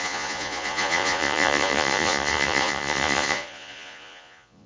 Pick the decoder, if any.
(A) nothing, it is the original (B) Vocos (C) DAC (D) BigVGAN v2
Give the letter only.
B